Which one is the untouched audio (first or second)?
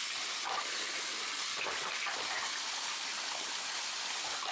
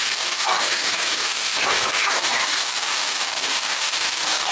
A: first